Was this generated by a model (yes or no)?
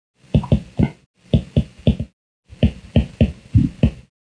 no